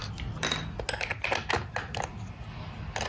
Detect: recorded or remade recorded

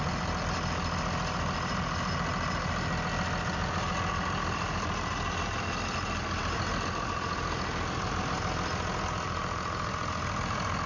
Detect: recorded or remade recorded